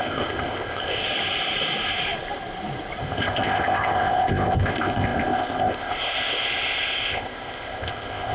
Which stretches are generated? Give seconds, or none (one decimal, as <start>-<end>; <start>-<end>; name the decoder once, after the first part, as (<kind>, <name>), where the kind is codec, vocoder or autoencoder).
0.0-1.0 (codec, ZipCodec); 3.0-8.3

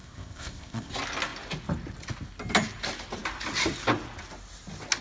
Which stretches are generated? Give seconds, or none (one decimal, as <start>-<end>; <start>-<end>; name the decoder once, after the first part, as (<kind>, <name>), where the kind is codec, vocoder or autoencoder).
0.0-0.9 (codec, ZipCodec)

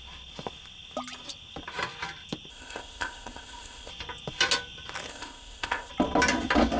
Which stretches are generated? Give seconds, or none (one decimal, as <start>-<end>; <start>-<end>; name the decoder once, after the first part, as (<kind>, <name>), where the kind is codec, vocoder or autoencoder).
2.5-3.9 (codec, ZipCodec); 5.1-5.9

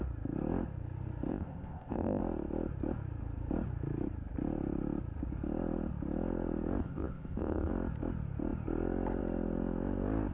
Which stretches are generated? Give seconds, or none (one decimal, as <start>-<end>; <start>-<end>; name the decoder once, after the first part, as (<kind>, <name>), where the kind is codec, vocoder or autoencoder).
1.3-2.2 (codec, ZipCodec); 6.8-7.7

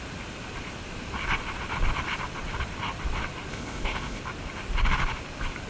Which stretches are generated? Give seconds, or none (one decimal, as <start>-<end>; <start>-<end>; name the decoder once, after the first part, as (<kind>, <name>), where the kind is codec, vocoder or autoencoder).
3.5-4.2 (codec, ZipCodec)

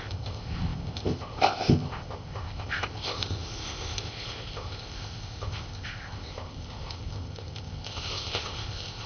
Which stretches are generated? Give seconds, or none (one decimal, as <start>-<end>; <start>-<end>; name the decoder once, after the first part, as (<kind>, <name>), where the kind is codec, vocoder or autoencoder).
0.0-9.1 (codec, ZipCodec)

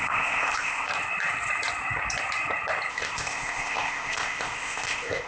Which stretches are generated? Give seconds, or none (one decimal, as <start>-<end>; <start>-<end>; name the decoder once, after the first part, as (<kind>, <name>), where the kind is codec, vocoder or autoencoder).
0.0-0.9 (codec, ZipCodec); 2.9-5.3